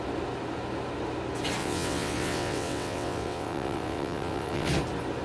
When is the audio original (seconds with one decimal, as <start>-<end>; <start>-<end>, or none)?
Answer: 0.0-1.6; 4.7-5.2